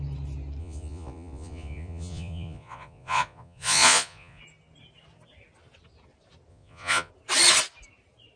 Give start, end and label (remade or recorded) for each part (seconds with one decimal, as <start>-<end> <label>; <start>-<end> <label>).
0.0-0.6 recorded; 0.6-4.4 remade; 4.4-6.5 recorded; 6.5-7.1 remade; 7.1-8.4 recorded